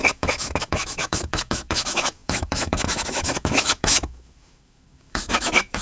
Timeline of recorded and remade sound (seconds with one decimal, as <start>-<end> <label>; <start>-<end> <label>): 0.0-5.8 remade